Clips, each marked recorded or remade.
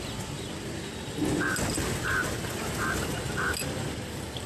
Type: recorded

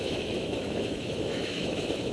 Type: remade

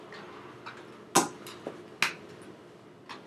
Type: recorded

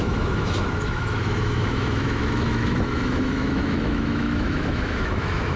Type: remade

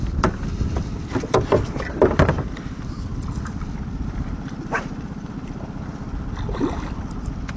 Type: recorded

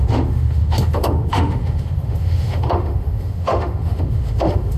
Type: remade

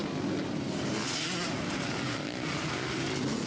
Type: recorded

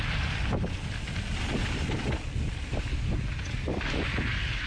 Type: recorded